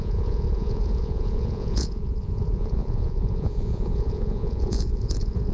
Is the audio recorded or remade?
remade